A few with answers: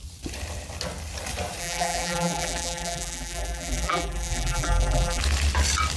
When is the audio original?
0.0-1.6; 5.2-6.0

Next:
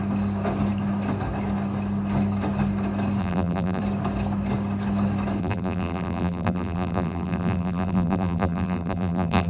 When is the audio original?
0.0-3.2; 3.8-5.4